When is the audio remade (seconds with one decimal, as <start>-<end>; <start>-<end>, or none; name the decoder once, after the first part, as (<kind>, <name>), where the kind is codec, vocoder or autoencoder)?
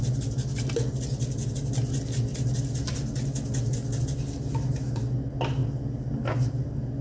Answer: none